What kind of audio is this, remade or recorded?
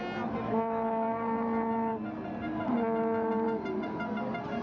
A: recorded